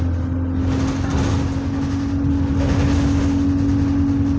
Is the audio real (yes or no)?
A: yes